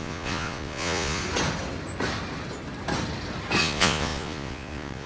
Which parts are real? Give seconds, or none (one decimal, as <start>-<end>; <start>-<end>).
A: 1.2-3.6